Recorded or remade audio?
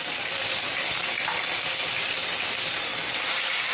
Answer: recorded